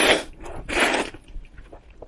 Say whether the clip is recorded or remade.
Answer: remade